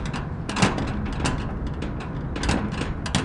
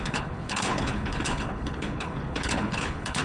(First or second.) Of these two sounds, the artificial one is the second